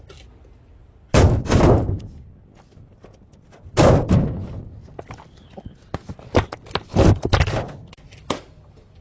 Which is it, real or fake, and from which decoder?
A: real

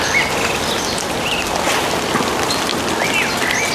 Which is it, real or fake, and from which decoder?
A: real